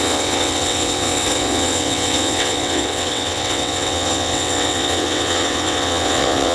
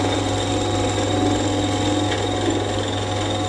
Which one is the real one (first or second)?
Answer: second